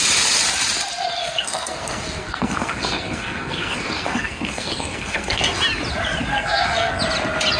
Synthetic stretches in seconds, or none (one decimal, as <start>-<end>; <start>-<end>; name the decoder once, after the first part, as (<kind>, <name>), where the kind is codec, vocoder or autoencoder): 1.2-5.4 (codec, SNAC); 6.3-7.0